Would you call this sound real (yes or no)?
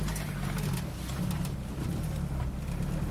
yes